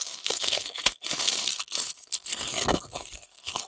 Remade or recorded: remade